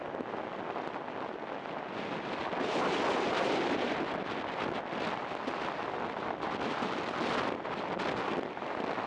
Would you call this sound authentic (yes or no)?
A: yes